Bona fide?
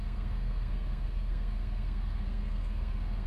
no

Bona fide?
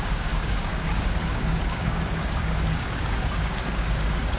no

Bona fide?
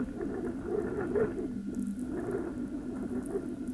yes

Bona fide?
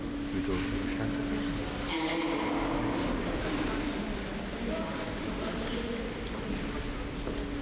yes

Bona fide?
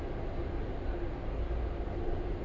yes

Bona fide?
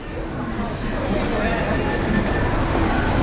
yes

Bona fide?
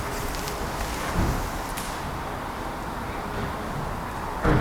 yes